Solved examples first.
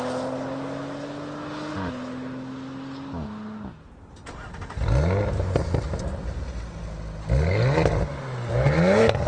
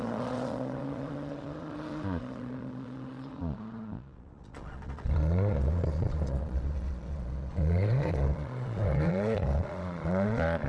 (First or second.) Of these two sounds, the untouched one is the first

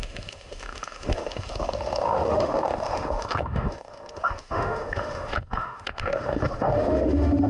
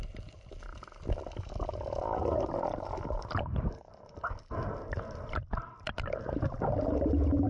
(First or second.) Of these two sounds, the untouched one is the second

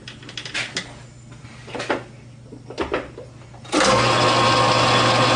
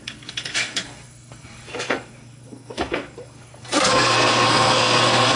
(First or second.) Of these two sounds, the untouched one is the first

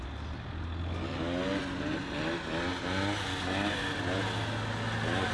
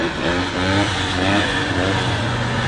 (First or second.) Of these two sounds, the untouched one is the first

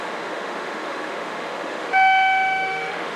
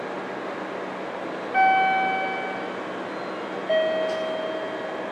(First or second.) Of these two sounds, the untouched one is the second